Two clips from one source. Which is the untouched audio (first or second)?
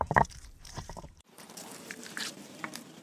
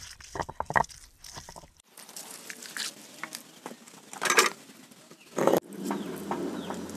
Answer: second